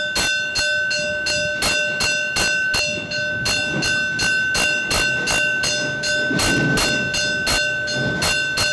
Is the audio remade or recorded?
recorded